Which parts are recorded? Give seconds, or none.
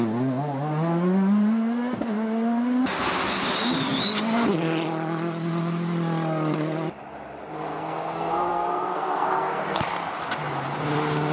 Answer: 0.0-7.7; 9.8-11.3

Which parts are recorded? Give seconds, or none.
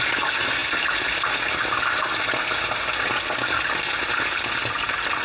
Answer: 0.0-5.2